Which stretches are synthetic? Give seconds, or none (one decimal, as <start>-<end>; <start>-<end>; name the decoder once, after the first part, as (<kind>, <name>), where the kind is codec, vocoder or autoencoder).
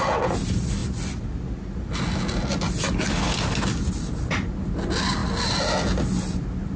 none